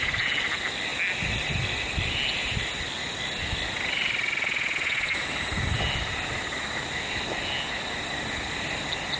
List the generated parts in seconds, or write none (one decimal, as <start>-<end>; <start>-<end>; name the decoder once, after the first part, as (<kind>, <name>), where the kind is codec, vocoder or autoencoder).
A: none